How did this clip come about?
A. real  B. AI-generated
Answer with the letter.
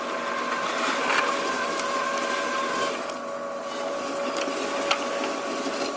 A